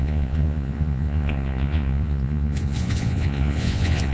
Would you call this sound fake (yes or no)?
yes